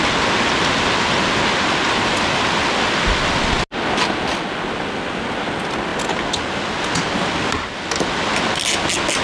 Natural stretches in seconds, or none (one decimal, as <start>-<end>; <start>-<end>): 0.0-9.2